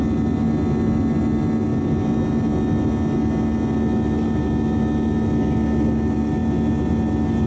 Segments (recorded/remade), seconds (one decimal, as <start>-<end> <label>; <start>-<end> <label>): 0.0-7.5 recorded